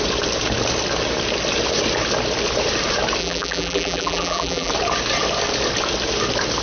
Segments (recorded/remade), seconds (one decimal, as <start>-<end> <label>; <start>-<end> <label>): 0.0-3.2 recorded; 3.2-4.7 remade; 4.7-6.6 recorded

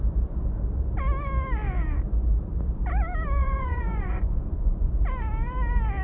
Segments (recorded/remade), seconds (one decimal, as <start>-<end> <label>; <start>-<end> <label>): 0.0-3.4 recorded; 3.4-4.9 remade; 4.9-6.0 recorded

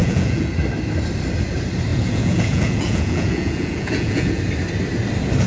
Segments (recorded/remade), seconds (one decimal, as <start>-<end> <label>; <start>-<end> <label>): 0.0-0.5 remade; 0.5-1.9 recorded; 1.9-4.4 remade; 4.4-5.5 recorded

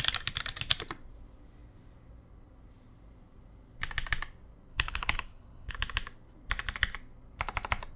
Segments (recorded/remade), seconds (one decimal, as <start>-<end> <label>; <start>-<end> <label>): 0.0-4.7 recorded; 4.7-5.7 remade; 5.7-8.0 recorded

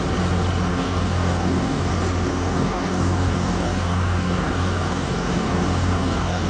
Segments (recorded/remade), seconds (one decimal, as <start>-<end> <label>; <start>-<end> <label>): 0.0-0.7 recorded; 0.7-1.9 remade; 1.9-2.3 recorded; 2.3-6.5 remade

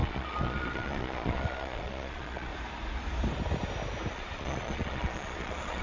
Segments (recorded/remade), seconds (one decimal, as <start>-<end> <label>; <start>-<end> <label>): 0.0-2.5 remade; 2.5-4.1 recorded; 4.1-5.8 remade

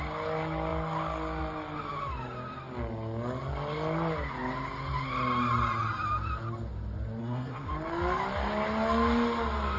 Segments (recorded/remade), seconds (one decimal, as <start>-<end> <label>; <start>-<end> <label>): 0.0-7.2 recorded; 7.2-7.7 remade; 7.7-9.8 recorded

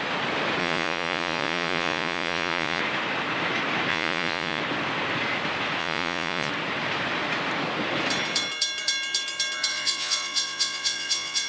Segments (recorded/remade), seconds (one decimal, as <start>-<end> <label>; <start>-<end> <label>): 0.0-0.6 recorded; 0.6-2.8 remade; 2.8-3.9 recorded; 3.9-4.6 remade; 4.6-5.8 recorded; 5.8-6.5 remade; 6.5-9.7 recorded; 9.7-11.5 remade